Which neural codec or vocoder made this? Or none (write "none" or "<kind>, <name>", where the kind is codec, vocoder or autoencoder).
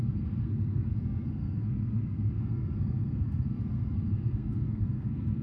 codec, SNAC